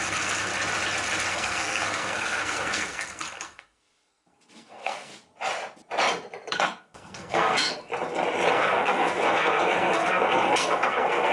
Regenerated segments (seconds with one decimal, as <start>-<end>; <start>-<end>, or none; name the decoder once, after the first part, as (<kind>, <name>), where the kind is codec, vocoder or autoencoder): 0.0-0.5 (codec, SNAC); 1.3-5.1; 6.5-7.9; 8.5-11.3